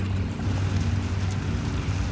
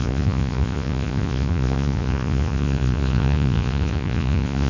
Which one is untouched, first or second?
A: first